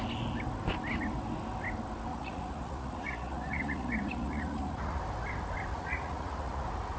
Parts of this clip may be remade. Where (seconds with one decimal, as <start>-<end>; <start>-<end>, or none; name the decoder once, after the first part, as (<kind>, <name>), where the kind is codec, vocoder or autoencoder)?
2.1-5.0 (vocoder, Vocos); 5.7-6.6